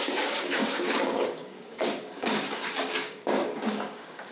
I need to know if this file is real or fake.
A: fake